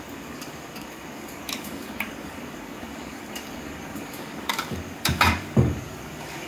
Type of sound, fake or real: fake